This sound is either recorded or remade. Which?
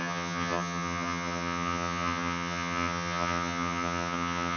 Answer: remade